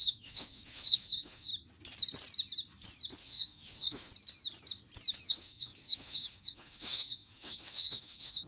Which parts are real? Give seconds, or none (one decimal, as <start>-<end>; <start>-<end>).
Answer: 1.5-3.2; 4.1-5.3

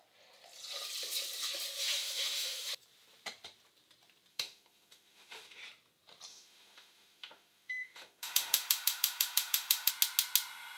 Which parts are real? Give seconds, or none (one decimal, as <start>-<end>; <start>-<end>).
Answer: 0.0-1.8; 2.7-4.3; 5.6-6.3; 9.9-10.8

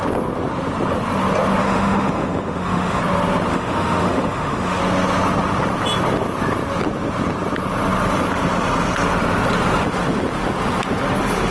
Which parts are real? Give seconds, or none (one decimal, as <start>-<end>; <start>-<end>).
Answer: 0.0-1.6; 3.0-3.5; 4.8-11.5

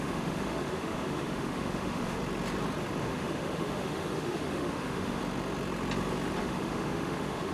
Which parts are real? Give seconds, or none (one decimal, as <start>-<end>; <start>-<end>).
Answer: 2.2-3.0; 5.2-6.4

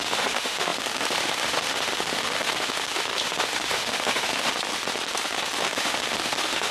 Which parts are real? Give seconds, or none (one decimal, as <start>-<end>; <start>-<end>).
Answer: 4.5-5.6